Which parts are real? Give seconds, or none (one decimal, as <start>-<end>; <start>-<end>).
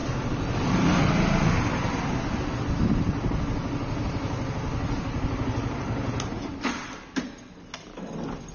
0.0-8.5